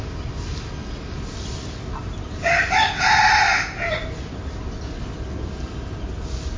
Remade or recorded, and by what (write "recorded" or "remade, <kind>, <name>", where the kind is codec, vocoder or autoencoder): recorded